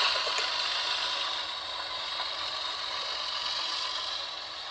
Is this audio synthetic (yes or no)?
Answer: no